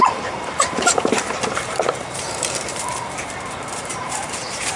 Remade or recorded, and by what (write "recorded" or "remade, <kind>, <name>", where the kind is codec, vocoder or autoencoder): remade, vocoder, BigVGAN v2